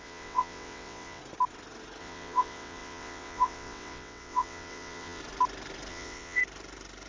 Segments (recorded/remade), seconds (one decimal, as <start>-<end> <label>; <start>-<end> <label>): 0.0-1.2 remade; 1.2-2.0 recorded; 2.0-5.2 remade; 5.2-5.9 recorded; 5.9-6.4 remade; 6.4-7.1 recorded

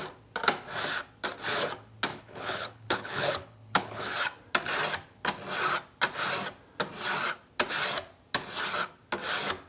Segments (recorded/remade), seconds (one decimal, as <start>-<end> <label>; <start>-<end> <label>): 0.0-2.1 recorded; 2.1-4.0 remade; 4.0-9.7 recorded

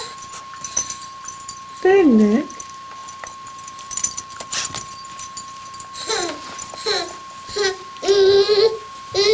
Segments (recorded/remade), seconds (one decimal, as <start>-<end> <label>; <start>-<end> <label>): 0.0-9.3 remade

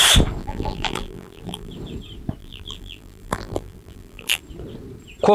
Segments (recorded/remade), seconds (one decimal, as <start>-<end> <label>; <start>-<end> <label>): 0.0-0.4 recorded; 0.4-1.7 remade; 1.7-2.4 recorded; 2.4-4.4 remade; 4.4-5.3 recorded

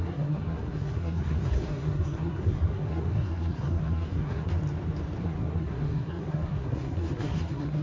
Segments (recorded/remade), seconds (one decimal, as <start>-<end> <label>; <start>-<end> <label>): 0.0-4.5 remade; 4.5-5.2 recorded; 5.2-7.8 remade

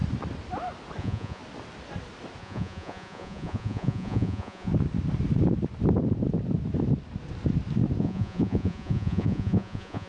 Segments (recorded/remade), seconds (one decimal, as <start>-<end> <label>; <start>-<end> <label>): 0.0-1.0 recorded; 1.0-1.4 remade; 1.4-2.4 recorded; 2.4-4.7 remade; 4.7-8.0 recorded; 8.0-10.1 remade

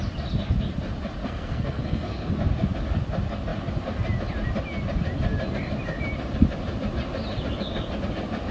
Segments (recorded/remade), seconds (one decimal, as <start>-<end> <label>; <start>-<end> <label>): 0.0-1.2 recorded; 1.2-2.3 remade; 2.3-8.5 recorded